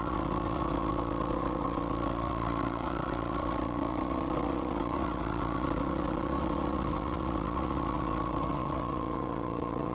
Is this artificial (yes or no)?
yes